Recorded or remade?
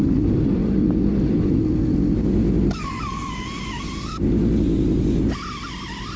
recorded